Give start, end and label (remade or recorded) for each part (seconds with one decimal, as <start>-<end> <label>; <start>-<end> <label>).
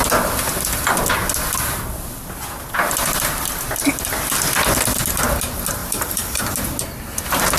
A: 0.0-5.8 recorded; 5.8-6.4 remade; 6.4-7.6 recorded